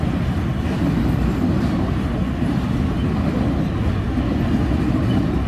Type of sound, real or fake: real